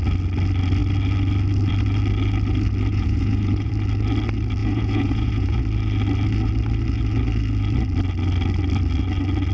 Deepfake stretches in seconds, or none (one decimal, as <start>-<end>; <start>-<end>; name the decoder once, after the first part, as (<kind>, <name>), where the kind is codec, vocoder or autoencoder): 2.9-3.7 (vocoder, Vocos); 4.6-5.6